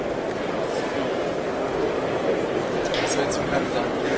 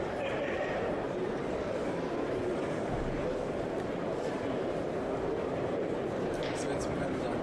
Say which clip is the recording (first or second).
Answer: first